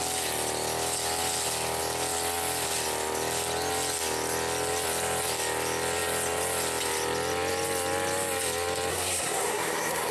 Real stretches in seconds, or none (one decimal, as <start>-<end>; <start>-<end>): 0.0-8.9